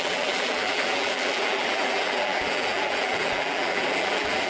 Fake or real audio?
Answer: fake